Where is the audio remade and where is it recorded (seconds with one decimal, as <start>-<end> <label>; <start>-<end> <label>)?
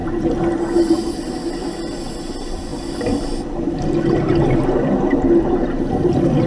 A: 0.0-6.5 recorded